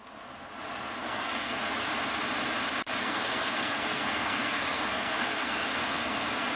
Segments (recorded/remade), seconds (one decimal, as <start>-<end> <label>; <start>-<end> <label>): 0.0-1.0 recorded; 1.0-1.6 remade; 1.6-3.0 recorded; 3.0-6.6 remade